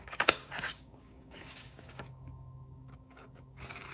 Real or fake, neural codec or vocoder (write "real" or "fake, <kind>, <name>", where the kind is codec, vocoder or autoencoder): fake, codec, DAC